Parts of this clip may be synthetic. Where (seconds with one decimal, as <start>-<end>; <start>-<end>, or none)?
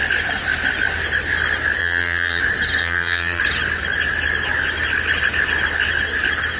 1.8-2.4; 2.8-3.4